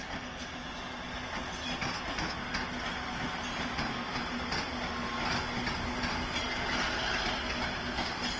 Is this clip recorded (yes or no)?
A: yes